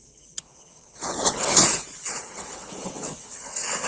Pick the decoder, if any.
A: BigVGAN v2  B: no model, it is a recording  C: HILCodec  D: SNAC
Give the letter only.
C